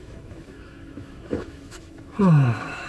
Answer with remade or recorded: remade